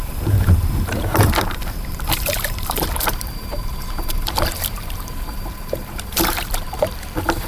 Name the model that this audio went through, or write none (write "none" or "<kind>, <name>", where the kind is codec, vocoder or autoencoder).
vocoder, BigVGAN v2